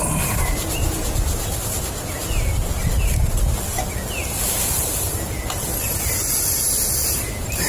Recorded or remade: recorded